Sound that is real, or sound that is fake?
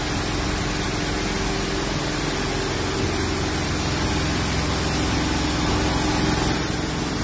real